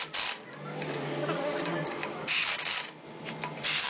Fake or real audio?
real